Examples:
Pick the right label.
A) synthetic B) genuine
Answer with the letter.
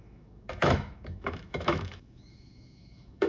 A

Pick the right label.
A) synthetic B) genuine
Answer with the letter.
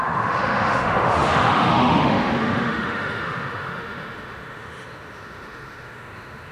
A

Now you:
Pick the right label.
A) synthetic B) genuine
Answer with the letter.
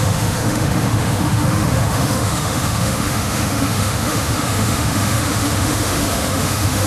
A